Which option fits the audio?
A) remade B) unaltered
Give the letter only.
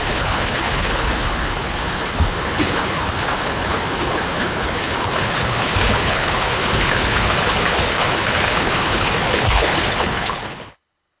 A